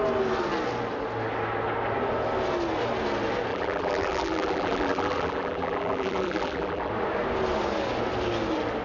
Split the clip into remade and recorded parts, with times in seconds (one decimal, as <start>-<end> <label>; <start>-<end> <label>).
0.0-3.5 recorded; 3.5-6.9 remade; 6.9-8.8 recorded